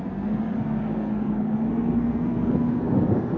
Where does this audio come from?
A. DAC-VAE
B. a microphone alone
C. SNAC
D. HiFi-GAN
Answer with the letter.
C